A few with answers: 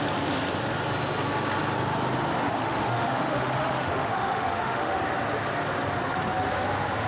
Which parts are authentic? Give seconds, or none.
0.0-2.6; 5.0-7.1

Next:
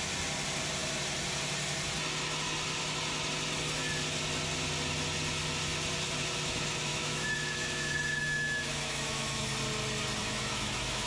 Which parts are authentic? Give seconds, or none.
0.0-6.9; 9.5-10.2

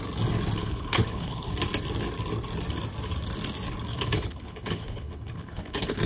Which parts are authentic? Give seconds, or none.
0.0-0.6; 1.5-3.9

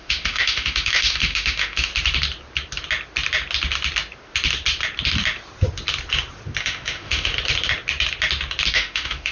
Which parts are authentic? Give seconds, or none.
1.9-6.6; 7.3-8.7

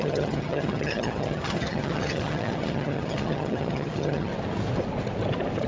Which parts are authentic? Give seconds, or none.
4.3-5.7

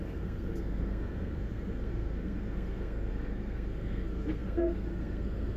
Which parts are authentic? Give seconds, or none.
none